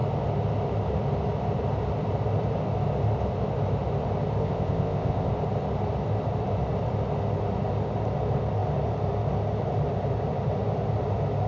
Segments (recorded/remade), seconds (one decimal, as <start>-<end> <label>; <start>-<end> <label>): 0.0-4.4 recorded; 4.4-5.3 remade; 5.3-11.5 recorded